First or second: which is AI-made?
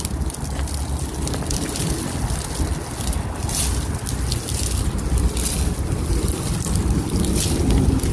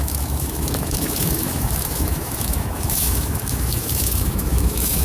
second